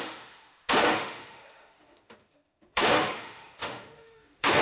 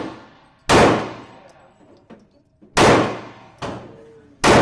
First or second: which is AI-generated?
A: first